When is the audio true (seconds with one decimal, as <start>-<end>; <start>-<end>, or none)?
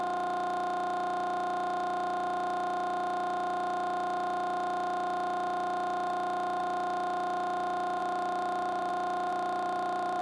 0.0-8.0; 8.9-9.3